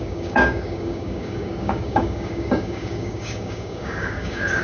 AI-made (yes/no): yes